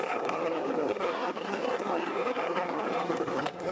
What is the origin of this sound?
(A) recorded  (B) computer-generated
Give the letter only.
B